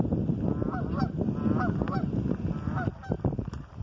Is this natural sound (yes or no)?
yes